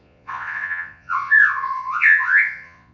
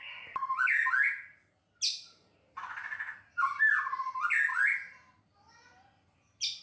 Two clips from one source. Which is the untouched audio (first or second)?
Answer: second